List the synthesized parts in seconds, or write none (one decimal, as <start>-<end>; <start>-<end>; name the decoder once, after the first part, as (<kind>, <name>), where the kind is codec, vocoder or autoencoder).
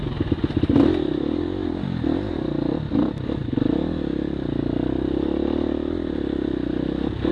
none